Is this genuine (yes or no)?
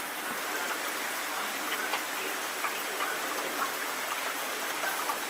yes